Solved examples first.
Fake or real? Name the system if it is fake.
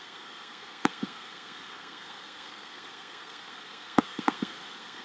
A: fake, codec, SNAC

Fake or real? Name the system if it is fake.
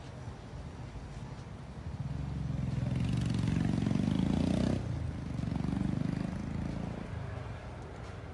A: real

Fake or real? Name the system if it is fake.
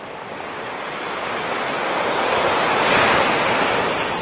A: real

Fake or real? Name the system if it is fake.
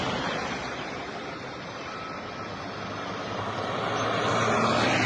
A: real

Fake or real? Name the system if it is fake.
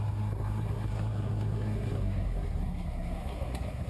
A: fake, codec, SNAC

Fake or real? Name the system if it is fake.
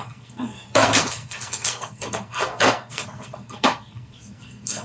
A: fake, codec, SNAC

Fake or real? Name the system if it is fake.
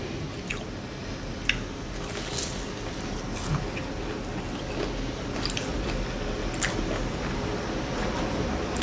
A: real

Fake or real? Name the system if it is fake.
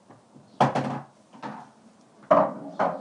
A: real